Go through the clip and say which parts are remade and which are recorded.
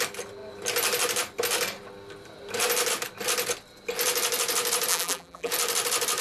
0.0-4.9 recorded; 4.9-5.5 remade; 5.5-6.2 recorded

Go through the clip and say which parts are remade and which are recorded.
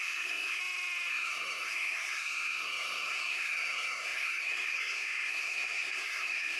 0.0-0.6 remade; 0.6-1.1 recorded; 1.1-6.6 remade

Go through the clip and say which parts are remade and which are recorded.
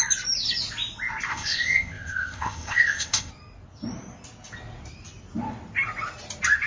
0.0-1.3 recorded; 1.3-3.3 remade; 3.3-6.7 recorded